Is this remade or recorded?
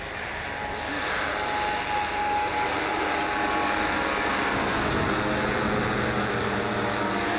recorded